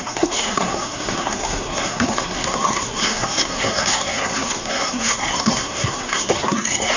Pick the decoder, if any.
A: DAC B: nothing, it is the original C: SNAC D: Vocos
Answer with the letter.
C